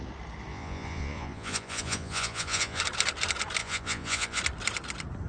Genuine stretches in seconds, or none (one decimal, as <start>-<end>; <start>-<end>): 0.0-0.5; 2.8-3.6; 4.4-5.3